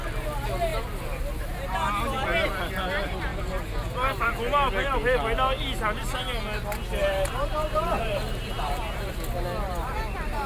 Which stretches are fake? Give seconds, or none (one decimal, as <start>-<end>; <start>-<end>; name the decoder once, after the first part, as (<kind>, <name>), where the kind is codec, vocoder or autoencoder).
3.3-4.3 (vocoder, BigVGAN v2); 7.0-8.8